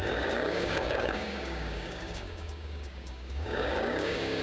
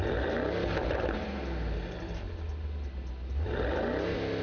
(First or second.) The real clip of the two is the second